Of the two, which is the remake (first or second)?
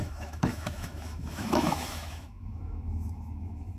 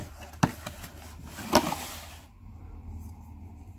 first